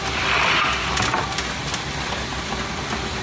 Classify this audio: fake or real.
real